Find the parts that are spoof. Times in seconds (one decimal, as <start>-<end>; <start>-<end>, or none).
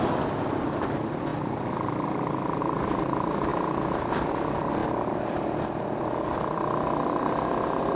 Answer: 4.8-7.2